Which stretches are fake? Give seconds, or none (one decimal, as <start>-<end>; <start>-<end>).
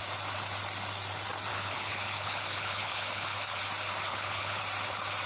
1.5-3.6; 4.1-4.6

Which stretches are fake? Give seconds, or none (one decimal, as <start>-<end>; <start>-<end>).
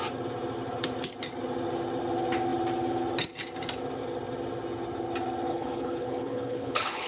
5.5-7.1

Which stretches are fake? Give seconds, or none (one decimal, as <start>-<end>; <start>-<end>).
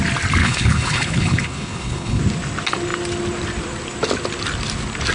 0.4-2.2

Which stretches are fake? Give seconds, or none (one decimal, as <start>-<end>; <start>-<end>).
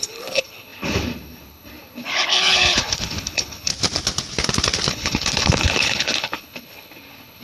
0.0-3.7; 4.9-7.4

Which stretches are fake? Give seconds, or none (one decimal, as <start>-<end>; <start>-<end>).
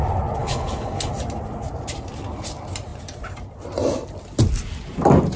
0.4-1.1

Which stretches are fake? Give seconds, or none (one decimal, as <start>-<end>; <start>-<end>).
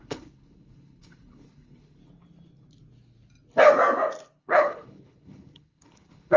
0.0-2.0; 4.4-6.4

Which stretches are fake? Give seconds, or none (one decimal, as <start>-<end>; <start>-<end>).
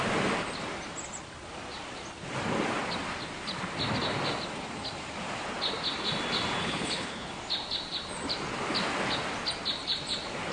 6.6-7.3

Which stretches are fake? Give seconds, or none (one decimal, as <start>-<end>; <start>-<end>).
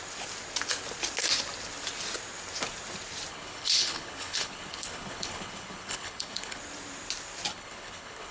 3.3-6.6; 7.5-8.3